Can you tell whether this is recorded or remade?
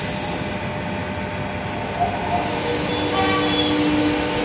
recorded